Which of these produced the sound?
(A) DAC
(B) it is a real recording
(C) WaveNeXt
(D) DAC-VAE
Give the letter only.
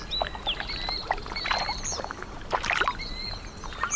B